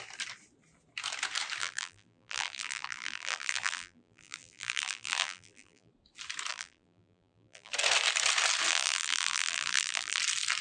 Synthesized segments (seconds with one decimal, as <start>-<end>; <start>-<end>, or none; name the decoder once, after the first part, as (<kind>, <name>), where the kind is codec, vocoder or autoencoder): 1.6-5.9 (vocoder, BigVGAN v2); 6.5-7.7; 8.7-10.2